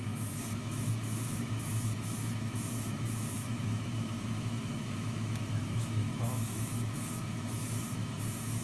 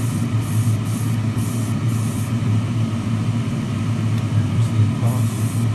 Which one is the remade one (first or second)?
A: first